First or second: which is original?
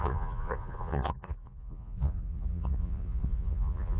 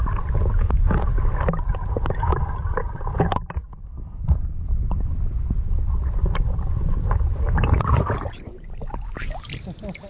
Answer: second